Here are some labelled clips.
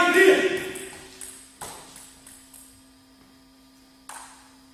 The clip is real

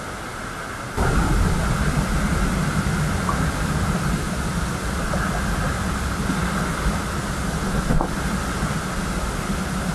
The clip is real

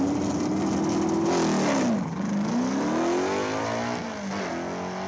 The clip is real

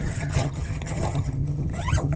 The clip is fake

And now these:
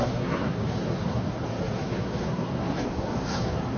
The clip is fake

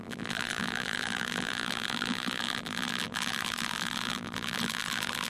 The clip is fake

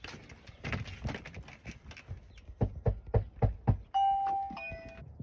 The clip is real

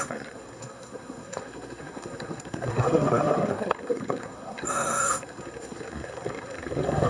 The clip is fake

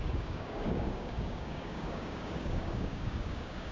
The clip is fake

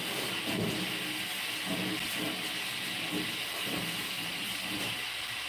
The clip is real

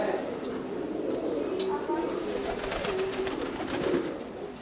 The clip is real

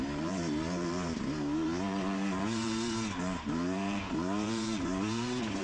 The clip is fake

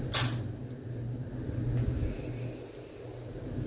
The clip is real